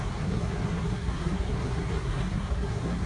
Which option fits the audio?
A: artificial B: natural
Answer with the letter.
A